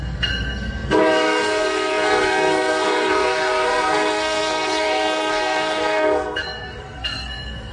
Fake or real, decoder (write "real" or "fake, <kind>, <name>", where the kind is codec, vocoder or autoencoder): fake, codec, SNAC